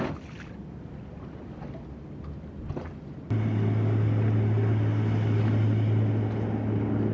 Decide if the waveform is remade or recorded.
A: recorded